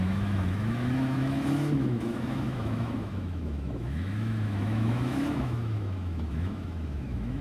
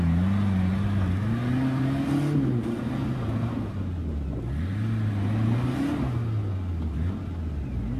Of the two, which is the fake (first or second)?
first